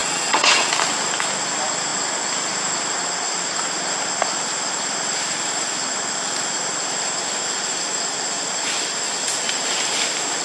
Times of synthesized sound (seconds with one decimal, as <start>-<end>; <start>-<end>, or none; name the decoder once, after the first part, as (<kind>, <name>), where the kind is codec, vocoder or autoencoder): 0.0-0.7 (vocoder, WaveNeXt)